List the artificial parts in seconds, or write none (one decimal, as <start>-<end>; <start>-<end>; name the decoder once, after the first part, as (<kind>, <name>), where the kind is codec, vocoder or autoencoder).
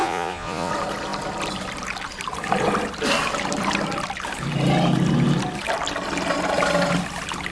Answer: 0.0-0.7 (vocoder, Vocos)